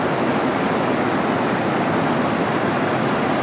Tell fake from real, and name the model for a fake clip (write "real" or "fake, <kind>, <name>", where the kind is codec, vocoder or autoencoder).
real